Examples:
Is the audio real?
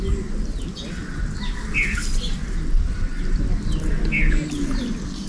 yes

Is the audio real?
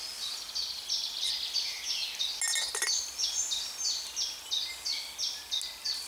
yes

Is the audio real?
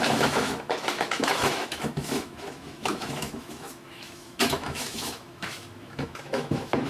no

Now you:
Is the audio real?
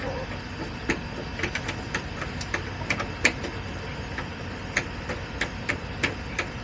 yes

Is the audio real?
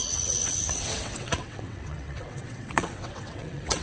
no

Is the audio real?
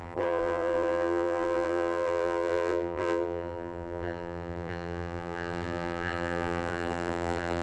no